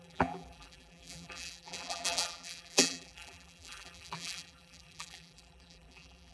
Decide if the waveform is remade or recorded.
remade